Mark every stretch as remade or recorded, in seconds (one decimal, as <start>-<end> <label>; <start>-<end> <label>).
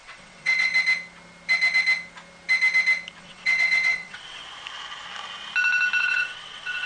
0.0-0.7 remade; 0.7-3.2 recorded; 3.2-4.4 remade; 4.4-6.0 recorded; 6.0-6.9 remade